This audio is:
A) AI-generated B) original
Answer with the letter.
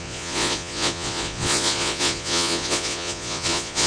A